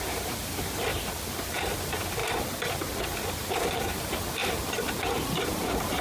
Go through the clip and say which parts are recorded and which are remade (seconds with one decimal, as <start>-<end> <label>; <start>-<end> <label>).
0.0-0.9 remade; 0.9-1.5 recorded; 1.5-2.2 remade; 2.2-3.3 recorded; 3.3-4.4 remade; 4.4-5.3 recorded; 5.3-6.0 remade